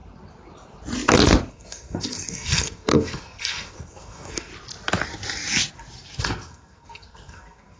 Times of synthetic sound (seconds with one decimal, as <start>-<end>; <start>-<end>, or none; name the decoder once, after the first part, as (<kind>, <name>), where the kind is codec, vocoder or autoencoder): 1.5-4.5 (codec, SNAC); 6.2-7.8